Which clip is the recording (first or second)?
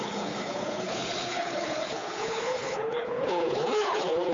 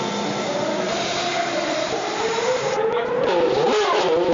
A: second